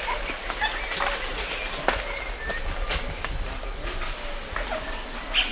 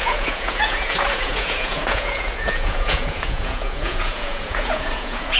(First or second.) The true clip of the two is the first